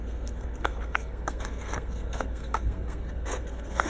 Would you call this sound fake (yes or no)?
yes